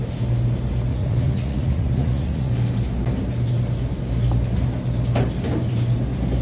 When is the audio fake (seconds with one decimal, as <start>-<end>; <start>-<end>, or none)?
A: 0.9-2.5